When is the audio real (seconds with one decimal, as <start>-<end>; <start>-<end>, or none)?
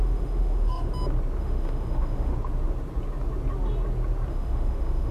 0.9-1.4; 2.3-4.3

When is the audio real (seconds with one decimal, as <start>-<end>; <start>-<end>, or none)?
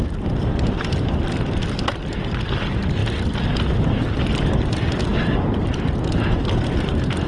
0.0-7.3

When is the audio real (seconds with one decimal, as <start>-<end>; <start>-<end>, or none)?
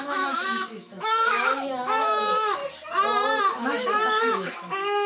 2.6-3.4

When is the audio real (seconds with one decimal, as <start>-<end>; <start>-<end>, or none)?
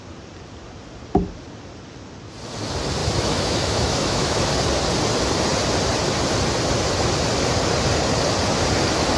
0.0-3.0; 4.5-9.2